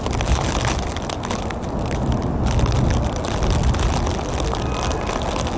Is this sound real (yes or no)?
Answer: yes